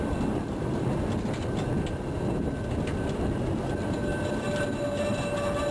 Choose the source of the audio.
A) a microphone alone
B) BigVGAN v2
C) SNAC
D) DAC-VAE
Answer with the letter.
A